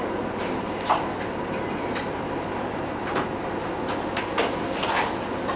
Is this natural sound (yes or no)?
yes